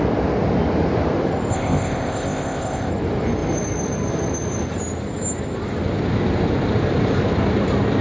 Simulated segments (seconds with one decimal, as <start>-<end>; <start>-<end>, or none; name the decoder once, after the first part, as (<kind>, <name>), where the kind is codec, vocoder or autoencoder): 1.5-2.9 (codec, ZipCodec)